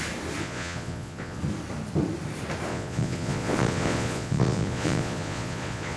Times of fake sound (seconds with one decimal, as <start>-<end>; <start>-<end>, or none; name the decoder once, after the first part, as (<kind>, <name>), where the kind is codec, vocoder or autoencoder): 0.4-1.4 (vocoder, Vocos); 2.7-6.0